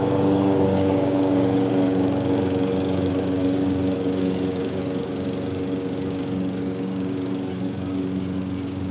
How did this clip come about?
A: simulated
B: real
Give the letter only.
A